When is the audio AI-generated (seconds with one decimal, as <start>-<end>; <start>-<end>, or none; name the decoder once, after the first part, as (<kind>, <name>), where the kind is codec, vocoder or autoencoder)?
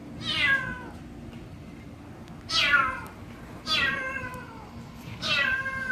3.5-4.3 (vocoder, BigVGAN v2); 5.0-5.9